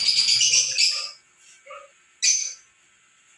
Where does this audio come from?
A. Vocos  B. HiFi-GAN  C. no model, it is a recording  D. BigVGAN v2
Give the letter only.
C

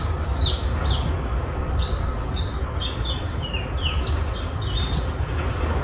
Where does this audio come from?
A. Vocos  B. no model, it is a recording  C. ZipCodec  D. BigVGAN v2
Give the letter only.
B